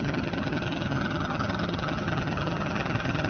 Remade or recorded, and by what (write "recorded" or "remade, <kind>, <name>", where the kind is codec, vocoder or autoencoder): remade, vocoder, HiFi-GAN